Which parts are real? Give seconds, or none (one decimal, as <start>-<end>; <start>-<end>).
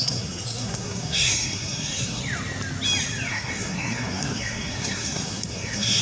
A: 2.2-3.3